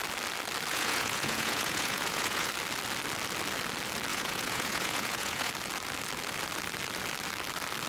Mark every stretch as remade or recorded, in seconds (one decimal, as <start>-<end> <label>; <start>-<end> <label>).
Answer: 0.0-0.7 recorded; 0.7-2.5 remade; 2.5-4.1 recorded; 4.1-5.5 remade; 5.5-7.9 recorded